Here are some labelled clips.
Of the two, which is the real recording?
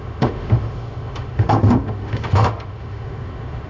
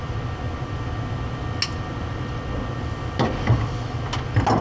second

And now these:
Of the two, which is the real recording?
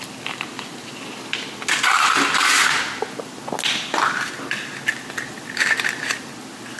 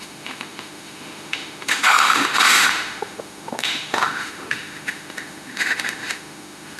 first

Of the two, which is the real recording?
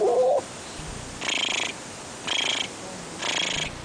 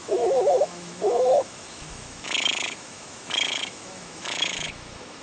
first